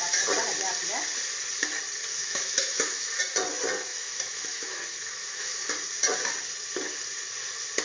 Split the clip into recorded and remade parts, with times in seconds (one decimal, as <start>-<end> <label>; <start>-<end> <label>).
0.0-2.1 recorded; 2.1-3.2 remade; 3.2-3.9 recorded; 3.9-5.7 remade; 5.7-7.8 recorded